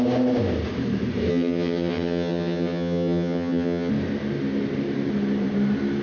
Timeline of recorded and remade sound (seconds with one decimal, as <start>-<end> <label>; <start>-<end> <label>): 0.0-1.3 recorded; 1.3-3.9 remade; 3.9-6.0 recorded